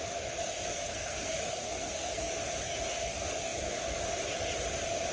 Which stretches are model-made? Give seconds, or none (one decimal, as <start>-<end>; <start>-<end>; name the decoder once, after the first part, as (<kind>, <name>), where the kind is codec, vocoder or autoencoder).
0.7-2.3 (codec, SNAC)